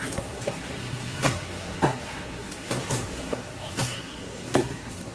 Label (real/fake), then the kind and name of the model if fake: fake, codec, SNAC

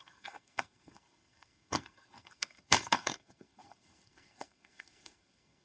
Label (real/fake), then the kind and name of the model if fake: fake, codec, SNAC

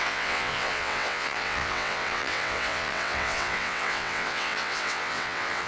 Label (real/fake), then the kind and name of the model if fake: fake, vocoder, WaveNeXt